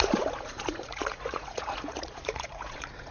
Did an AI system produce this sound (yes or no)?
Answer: yes